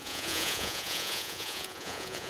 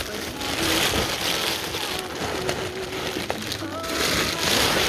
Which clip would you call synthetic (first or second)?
first